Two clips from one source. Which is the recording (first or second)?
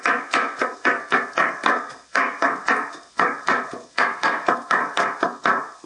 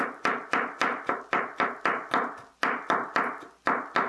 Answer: second